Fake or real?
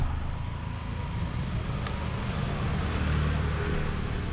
real